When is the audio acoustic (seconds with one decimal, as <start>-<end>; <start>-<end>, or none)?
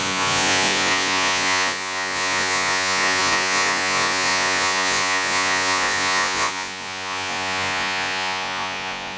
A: none